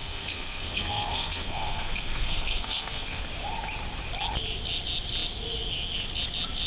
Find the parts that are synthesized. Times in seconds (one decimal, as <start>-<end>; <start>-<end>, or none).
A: 0.0-3.2